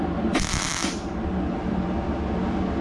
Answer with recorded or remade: recorded